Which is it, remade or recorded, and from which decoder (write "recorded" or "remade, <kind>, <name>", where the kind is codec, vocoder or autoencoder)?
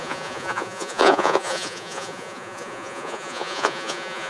remade, vocoder, Vocos